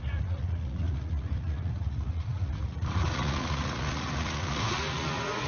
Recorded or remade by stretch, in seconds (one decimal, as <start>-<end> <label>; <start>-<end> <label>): 0.0-5.5 remade